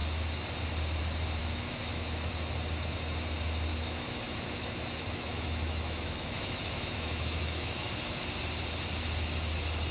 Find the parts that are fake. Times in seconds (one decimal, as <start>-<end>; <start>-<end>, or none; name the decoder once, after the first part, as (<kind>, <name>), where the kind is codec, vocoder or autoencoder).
1.4-2.3 (autoencoder, DAC-VAE); 3.7-7.9